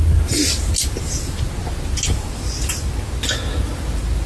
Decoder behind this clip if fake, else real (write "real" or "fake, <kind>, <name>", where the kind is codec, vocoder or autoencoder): real